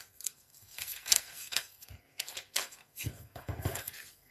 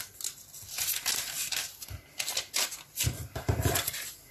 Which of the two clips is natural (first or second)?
second